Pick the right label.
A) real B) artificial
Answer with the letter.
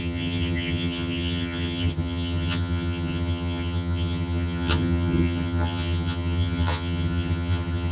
B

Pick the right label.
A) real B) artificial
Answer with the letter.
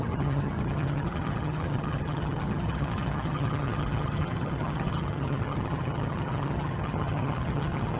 B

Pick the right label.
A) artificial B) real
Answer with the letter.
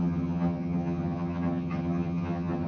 A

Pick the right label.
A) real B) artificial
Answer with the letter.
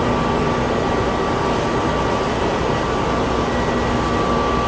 A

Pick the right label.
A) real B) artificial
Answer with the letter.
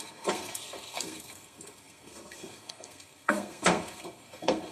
B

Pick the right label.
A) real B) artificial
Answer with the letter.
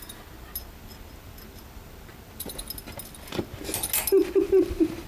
A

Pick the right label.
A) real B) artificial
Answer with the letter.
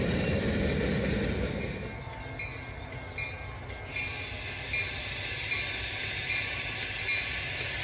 A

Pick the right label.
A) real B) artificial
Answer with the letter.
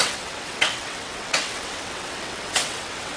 B